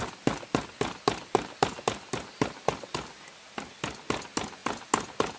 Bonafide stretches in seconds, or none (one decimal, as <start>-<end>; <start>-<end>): 0.0-5.4